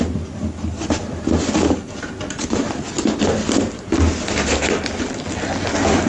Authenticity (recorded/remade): recorded